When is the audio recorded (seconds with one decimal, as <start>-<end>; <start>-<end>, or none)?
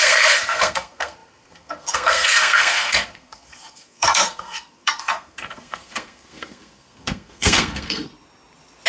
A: 8.1-8.9